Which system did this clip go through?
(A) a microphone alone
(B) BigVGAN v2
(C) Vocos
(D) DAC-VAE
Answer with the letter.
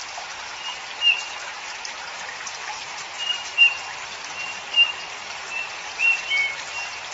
B